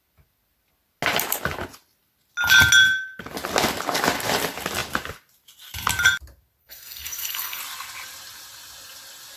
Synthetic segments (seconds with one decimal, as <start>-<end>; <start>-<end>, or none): 6.6-7.6